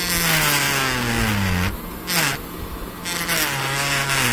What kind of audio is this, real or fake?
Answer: real